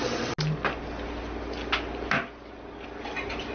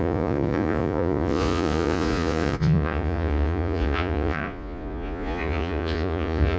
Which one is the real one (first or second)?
first